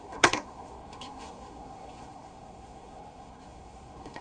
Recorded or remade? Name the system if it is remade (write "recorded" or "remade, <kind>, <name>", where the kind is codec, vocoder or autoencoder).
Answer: remade, codec, SNAC